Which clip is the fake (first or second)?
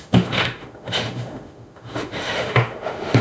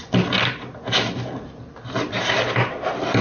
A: first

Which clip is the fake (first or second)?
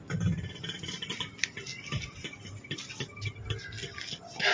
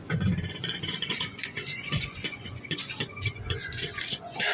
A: second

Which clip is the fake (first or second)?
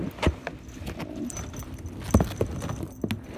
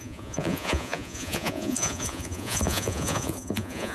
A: second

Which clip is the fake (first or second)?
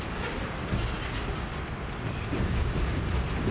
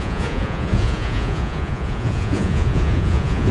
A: second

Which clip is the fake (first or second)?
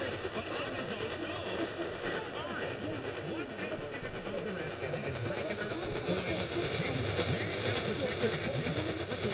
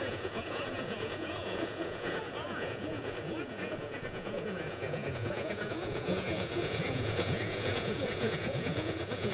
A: second